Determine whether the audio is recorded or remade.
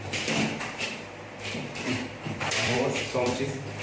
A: remade